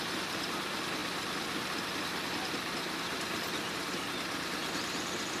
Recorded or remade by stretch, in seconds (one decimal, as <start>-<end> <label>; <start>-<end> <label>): 0.0-5.4 recorded